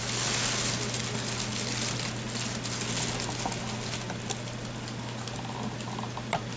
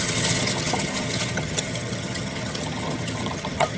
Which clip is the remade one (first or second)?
second